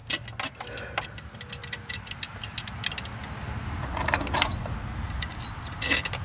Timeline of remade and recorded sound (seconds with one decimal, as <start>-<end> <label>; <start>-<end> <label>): 0.0-6.2 recorded